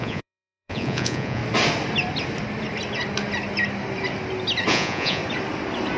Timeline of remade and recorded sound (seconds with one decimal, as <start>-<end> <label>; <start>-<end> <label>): 0.0-1.4 remade; 1.4-4.7 recorded; 4.7-5.2 remade; 5.2-6.0 recorded